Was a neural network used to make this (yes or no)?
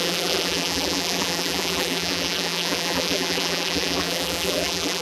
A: yes